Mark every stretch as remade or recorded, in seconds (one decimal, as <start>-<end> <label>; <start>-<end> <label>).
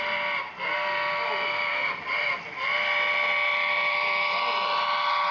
0.0-1.7 recorded; 1.7-2.3 remade; 2.3-5.3 recorded